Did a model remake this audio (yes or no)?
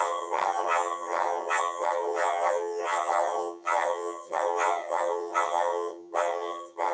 yes